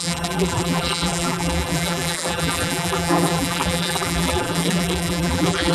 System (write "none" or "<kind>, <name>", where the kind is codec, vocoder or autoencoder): vocoder, BigVGAN v2